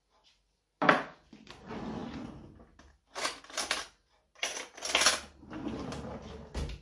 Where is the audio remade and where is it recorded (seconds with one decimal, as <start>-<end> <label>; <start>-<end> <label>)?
0.0-6.8 recorded